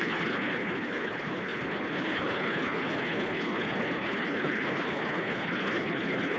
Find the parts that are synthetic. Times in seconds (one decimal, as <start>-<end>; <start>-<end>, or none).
0.0-6.4